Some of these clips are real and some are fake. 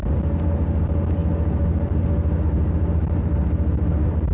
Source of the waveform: real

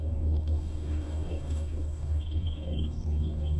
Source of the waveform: fake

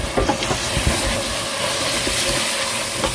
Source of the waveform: real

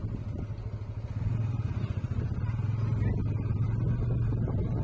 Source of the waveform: real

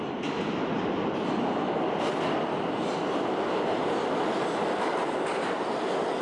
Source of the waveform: real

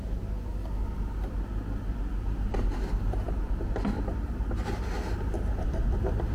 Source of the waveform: real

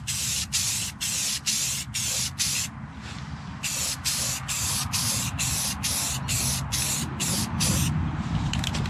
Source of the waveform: real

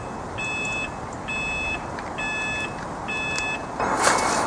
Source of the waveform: real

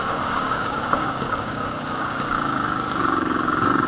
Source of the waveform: fake